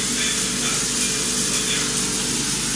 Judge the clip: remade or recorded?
recorded